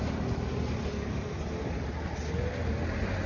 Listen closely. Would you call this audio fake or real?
real